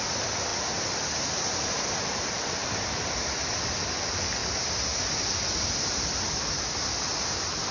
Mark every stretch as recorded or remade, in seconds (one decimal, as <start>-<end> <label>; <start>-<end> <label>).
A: 0.0-7.7 recorded

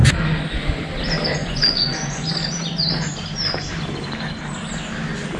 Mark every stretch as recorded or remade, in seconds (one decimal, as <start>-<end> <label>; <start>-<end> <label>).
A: 0.0-1.4 recorded; 1.4-2.3 remade; 2.3-5.4 recorded

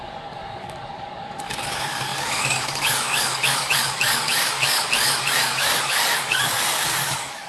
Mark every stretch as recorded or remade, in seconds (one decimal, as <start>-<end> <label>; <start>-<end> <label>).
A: 0.0-7.5 remade

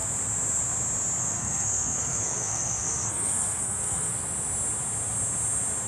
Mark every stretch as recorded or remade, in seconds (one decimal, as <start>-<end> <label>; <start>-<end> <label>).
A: 0.0-1.2 recorded; 1.2-4.1 remade; 4.1-5.9 recorded

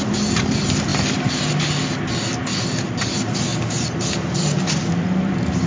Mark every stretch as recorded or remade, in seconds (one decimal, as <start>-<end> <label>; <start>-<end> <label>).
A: 0.0-5.7 recorded